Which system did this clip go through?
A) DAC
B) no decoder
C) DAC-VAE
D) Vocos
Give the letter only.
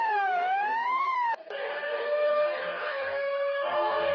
A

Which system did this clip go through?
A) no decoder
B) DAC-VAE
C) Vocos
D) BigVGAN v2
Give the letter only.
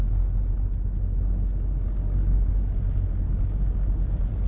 A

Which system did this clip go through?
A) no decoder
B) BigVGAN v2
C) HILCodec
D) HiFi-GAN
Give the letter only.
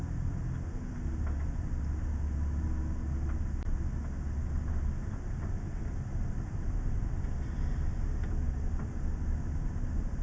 A